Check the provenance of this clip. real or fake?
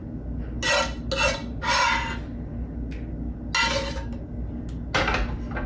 real